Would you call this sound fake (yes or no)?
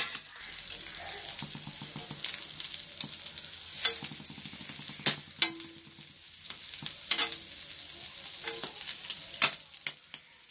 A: no